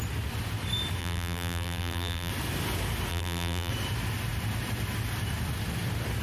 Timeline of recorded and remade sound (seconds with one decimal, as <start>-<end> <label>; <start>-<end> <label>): 0.0-1.0 recorded; 1.0-2.3 remade; 2.3-3.1 recorded; 3.1-3.7 remade; 3.7-6.2 recorded